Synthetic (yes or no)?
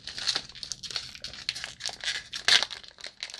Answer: no